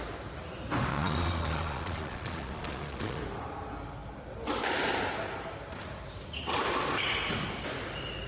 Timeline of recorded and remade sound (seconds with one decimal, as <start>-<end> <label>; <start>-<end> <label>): 0.0-0.9 recorded; 0.9-3.2 remade; 3.2-8.3 recorded